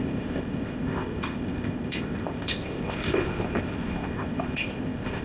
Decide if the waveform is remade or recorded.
remade